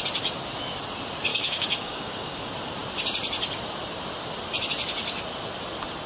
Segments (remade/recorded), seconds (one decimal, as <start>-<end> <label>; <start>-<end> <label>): 0.0-1.3 recorded; 1.3-2.4 remade; 2.4-6.1 recorded